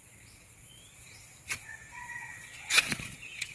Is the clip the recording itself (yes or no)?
no